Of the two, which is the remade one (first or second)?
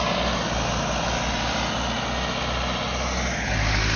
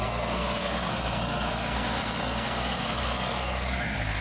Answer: second